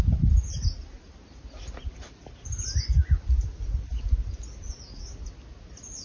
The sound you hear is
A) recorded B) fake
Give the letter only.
A